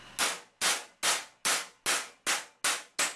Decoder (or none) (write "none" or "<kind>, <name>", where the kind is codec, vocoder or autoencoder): none